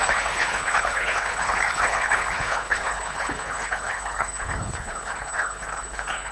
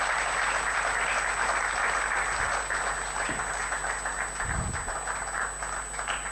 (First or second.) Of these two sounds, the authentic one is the second